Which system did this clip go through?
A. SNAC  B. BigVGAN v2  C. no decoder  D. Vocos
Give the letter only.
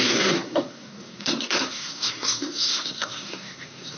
A